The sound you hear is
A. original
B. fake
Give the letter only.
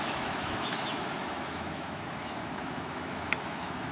B